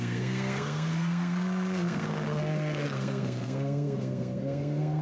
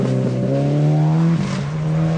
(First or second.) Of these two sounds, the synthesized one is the first